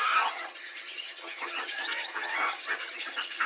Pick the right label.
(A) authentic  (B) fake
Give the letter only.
B